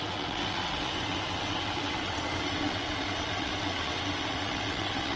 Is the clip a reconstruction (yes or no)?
yes